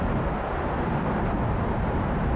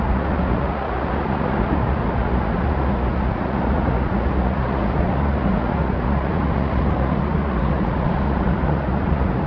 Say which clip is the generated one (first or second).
second